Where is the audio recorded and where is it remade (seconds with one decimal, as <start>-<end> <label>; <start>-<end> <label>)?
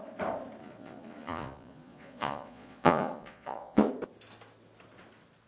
0.0-0.6 recorded; 0.6-3.9 remade; 3.9-5.5 recorded